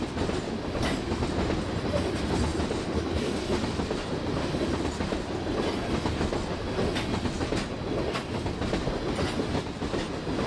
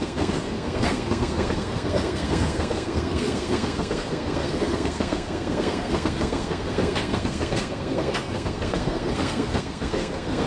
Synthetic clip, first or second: second